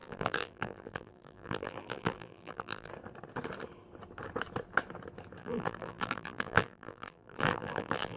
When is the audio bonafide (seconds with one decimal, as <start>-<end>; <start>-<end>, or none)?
2.9-5.4